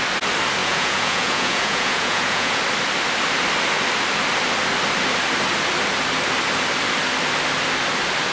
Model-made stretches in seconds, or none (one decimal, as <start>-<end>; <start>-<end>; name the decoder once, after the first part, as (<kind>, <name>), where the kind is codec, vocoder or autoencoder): 0.6-2.6 (vocoder, Vocos)